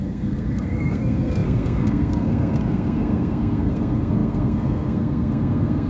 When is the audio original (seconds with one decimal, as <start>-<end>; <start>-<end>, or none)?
none